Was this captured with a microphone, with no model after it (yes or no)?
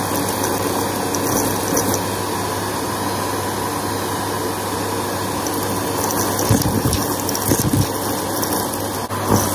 yes